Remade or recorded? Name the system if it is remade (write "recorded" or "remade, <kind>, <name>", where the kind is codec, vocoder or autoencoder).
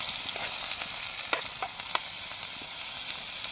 recorded